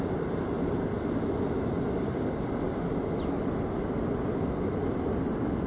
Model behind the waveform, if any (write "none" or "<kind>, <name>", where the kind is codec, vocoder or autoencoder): none